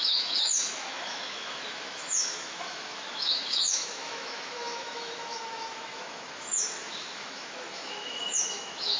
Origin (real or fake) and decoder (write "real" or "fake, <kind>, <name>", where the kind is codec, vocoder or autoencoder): fake, autoencoder, DAC-VAE